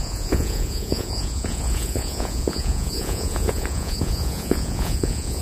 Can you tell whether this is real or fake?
fake